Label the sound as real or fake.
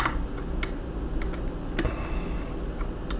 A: real